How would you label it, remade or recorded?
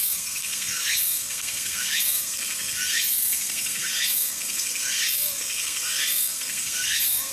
remade